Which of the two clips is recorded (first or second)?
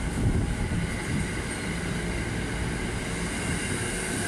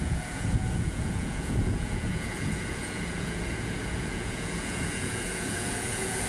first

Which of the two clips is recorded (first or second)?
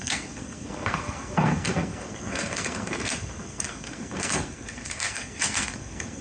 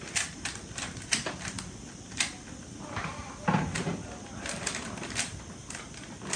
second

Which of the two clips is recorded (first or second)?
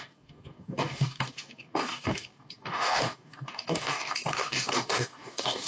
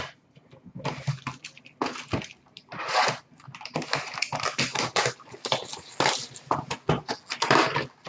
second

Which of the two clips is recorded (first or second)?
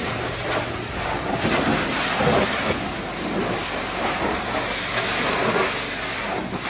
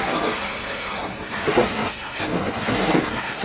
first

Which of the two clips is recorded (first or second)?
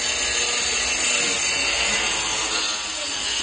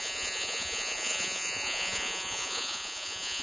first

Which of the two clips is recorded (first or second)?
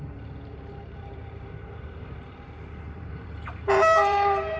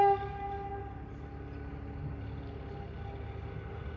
second